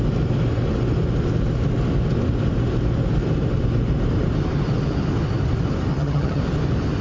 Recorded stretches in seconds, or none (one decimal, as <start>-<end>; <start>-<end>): 0.0-5.9; 6.4-7.0